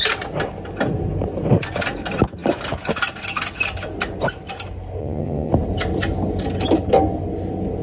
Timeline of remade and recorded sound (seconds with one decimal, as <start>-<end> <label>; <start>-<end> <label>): 0.0-5.0 recorded; 5.0-5.5 remade; 5.5-7.8 recorded